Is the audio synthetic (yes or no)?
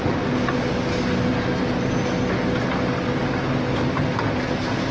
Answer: no